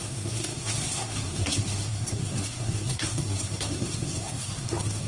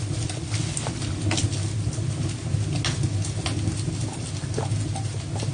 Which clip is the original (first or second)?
second